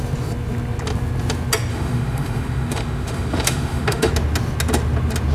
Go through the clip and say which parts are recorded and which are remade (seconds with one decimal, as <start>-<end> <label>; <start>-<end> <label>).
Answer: 0.0-1.7 recorded; 1.7-4.1 remade; 4.1-5.3 recorded